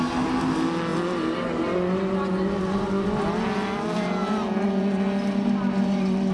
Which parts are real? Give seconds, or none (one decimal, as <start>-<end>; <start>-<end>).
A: 0.0-6.3

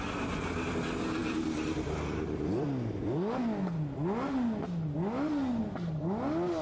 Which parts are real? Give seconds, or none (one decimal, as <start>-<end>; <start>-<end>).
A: 0.0-6.6

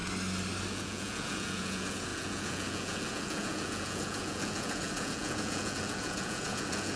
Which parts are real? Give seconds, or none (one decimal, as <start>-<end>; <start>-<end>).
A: 0.0-0.7

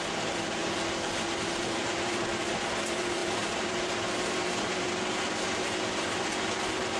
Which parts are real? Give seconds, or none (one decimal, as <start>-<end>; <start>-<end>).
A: 0.6-1.6